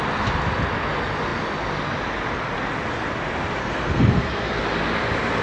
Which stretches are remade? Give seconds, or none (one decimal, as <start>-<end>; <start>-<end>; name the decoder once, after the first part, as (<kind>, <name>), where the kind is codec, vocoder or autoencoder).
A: 3.6-4.6 (codec, SNAC)